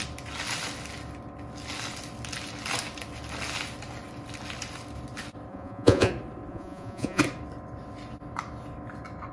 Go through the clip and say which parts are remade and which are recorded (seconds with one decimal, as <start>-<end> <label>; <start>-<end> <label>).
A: 0.0-5.5 recorded; 5.5-6.1 remade; 6.1-6.5 recorded; 6.5-7.2 remade; 7.2-9.3 recorded

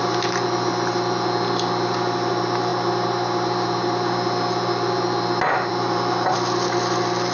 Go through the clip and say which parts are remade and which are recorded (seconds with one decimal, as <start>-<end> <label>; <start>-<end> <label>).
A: 0.0-7.3 recorded

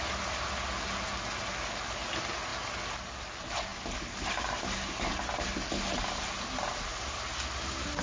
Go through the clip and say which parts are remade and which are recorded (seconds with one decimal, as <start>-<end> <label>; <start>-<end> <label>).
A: 0.0-8.0 recorded

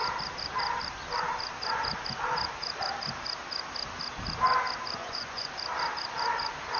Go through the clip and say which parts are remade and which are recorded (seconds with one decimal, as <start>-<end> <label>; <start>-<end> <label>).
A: 0.0-5.0 recorded; 5.0-5.5 remade; 5.5-6.8 recorded

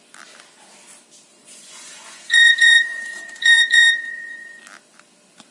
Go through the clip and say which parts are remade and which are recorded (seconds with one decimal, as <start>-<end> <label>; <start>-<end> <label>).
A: 0.0-1.3 recorded; 1.3-4.6 remade; 4.6-5.5 recorded

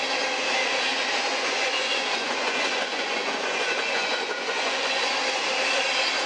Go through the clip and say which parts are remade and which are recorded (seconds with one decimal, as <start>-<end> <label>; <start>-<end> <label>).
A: 0.0-1.3 recorded; 1.3-5.1 remade; 5.1-6.3 recorded

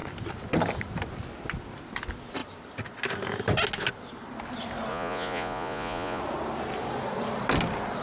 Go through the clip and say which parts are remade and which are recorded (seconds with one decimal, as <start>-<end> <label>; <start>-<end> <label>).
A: 0.0-4.9 recorded; 4.9-6.2 remade; 6.2-8.0 recorded

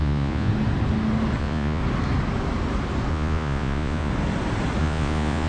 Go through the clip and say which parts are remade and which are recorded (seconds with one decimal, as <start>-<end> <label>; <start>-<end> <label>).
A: 0.0-0.5 remade; 0.5-1.4 recorded; 1.4-1.8 remade; 1.8-3.1 recorded; 3.1-4.1 remade; 4.1-4.8 recorded; 4.8-5.5 remade